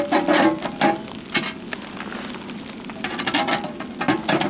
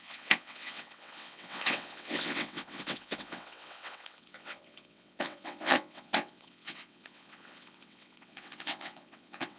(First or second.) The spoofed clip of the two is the second